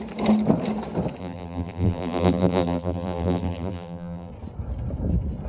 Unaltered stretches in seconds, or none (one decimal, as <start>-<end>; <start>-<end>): 0.0-1.2; 4.3-5.5